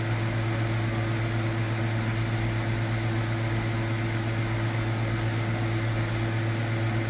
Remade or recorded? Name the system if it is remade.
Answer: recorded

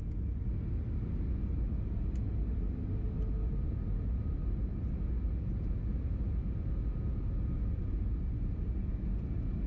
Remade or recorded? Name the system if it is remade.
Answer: recorded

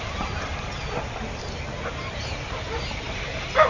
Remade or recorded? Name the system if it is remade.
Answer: recorded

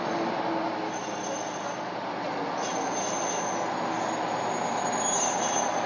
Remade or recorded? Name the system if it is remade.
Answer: recorded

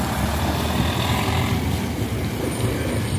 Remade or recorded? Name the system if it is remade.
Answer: recorded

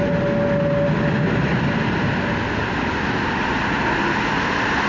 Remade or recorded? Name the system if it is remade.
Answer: recorded